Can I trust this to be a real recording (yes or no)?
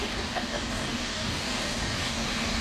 no